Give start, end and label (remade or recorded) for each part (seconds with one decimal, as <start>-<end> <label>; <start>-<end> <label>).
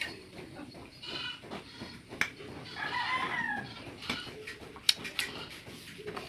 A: 0.0-0.8 remade; 0.8-1.6 recorded; 1.6-2.1 remade; 2.1-6.3 recorded